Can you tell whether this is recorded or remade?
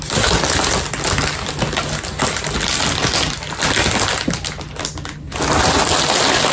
recorded